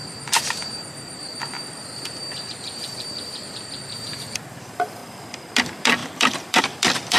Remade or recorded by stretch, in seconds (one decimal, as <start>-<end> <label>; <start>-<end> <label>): 0.0-4.3 recorded; 4.3-5.0 remade; 5.0-5.6 recorded; 5.6-7.2 remade